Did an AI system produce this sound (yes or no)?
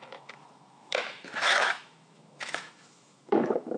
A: yes